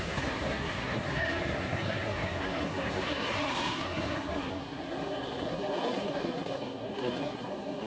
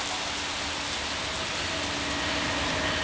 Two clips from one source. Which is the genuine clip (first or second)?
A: second